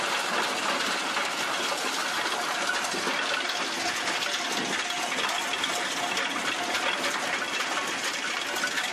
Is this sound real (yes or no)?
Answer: yes